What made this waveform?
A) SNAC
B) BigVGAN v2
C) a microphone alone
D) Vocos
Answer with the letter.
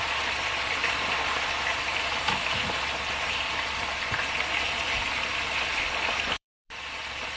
B